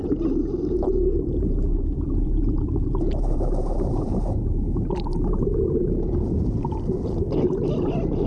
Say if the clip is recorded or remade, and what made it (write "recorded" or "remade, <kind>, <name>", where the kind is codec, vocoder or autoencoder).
remade, vocoder, BigVGAN v2